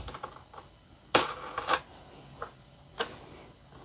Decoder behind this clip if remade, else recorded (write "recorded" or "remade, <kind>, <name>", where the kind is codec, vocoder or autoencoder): recorded